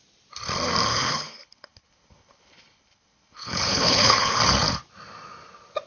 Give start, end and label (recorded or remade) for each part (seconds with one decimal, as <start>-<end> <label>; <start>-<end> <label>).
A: 0.0-0.9 recorded; 0.9-4.4 remade; 4.4-5.9 recorded